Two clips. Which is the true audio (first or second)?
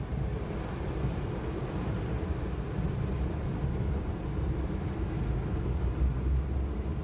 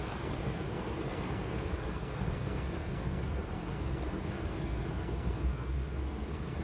first